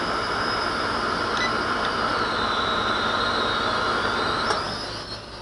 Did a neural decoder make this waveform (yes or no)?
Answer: no